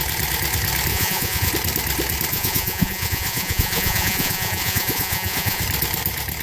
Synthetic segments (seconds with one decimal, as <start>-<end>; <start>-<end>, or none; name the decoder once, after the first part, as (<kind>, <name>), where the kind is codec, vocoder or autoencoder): 0.9-1.5 (vocoder, Vocos); 2.3-5.6